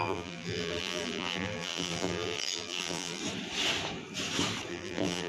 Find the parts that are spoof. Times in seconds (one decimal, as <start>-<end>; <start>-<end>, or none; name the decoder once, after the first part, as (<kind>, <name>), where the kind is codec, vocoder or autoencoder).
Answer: 0.0-3.2 (vocoder, BigVGAN v2); 4.7-5.3